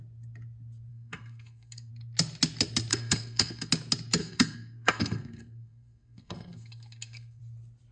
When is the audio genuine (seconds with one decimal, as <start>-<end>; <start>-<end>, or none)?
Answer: 0.0-0.9; 1.9-2.9; 3.7-4.2; 7.4-7.9